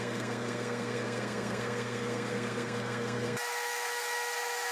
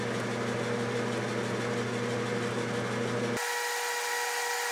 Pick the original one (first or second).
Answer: second